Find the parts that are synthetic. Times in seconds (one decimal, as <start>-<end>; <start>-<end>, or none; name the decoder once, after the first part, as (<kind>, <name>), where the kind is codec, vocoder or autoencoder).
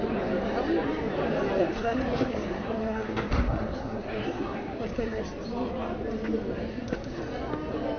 1.6-5.2 (codec, SNAC); 6.7-7.2